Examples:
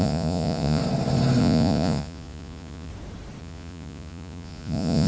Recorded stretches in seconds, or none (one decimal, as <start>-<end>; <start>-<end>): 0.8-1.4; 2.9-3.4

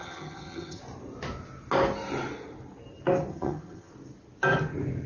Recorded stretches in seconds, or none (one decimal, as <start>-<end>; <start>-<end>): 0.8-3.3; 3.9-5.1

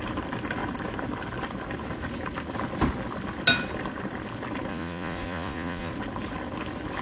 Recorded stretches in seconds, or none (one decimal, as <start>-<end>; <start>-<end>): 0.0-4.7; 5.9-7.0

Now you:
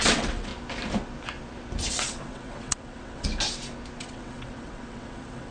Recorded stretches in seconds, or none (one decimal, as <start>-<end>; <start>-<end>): 0.5-1.9; 3.3-4.0

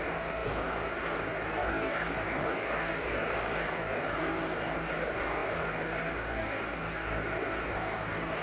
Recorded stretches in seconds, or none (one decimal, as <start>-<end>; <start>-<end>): none